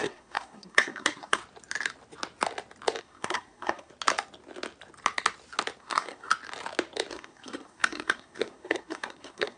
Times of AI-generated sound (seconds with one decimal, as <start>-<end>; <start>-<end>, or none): 0.0-1.4; 3.0-3.9; 5.8-6.3; 7.1-9.6